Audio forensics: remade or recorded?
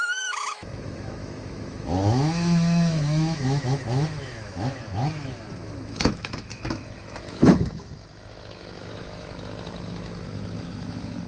remade